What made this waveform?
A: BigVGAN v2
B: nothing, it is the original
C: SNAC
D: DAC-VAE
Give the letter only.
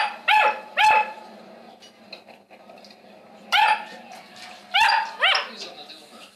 B